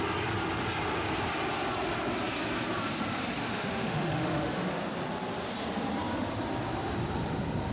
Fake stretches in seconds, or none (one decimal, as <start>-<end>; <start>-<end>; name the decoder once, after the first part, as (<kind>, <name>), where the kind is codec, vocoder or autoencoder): 3.4-4.7 (autoencoder, DAC-VAE)